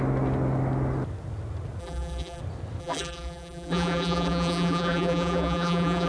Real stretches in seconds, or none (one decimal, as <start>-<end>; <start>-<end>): 0.0-1.8; 2.4-2.8